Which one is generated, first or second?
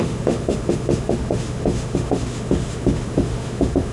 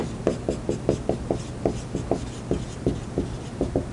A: first